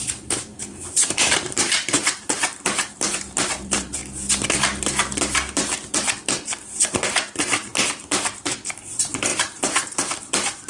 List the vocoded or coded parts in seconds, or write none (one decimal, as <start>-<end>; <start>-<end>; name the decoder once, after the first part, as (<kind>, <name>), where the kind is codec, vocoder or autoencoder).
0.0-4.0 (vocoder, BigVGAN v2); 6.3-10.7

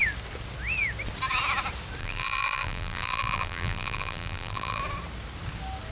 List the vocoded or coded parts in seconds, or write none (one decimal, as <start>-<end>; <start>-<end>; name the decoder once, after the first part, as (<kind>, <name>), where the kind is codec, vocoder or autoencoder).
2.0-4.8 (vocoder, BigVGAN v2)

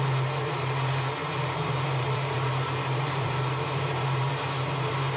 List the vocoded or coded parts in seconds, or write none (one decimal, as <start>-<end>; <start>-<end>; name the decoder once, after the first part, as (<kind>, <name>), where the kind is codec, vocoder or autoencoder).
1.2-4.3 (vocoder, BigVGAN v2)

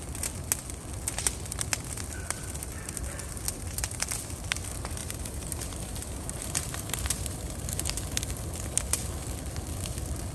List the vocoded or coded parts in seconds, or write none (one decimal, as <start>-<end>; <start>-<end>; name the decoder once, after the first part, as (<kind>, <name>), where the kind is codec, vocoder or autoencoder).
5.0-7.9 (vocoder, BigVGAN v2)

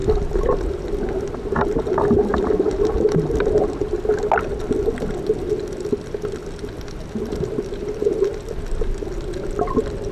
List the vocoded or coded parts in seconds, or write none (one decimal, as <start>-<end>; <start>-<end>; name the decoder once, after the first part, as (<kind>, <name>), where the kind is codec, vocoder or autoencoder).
none